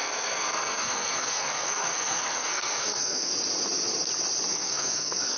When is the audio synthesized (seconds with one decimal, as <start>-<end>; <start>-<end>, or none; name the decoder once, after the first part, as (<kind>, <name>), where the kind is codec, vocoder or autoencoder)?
0.0-3.3 (codec, SNAC); 4.5-5.4